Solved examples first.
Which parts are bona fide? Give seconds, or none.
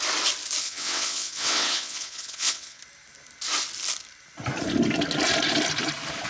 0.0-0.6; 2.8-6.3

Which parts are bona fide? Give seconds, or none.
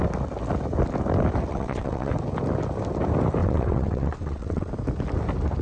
0.0-1.5; 2.1-3.4; 4.7-5.6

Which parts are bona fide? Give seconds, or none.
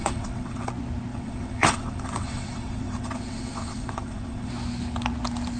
0.7-1.1; 4.5-5.6